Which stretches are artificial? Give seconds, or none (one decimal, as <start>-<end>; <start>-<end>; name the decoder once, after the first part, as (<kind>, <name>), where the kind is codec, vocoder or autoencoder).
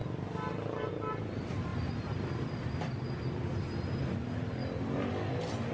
none